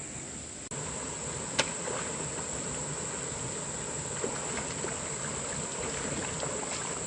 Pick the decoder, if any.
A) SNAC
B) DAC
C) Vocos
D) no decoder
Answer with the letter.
D